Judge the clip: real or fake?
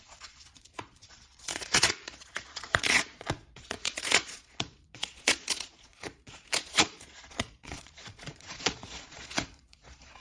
fake